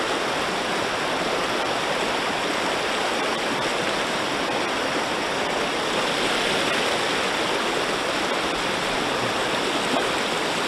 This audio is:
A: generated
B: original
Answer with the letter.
B